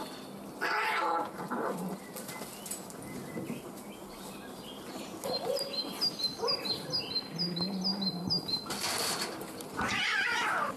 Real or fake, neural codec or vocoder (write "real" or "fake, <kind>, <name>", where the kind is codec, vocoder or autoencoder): real